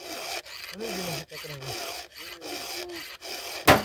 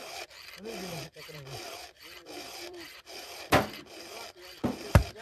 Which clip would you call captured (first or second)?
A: first